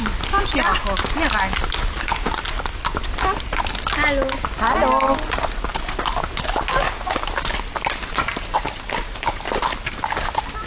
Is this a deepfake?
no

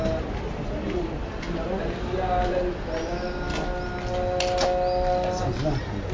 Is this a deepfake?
no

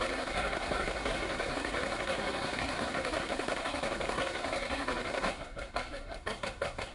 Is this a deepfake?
yes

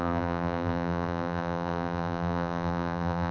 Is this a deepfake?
yes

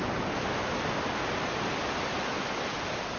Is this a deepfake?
no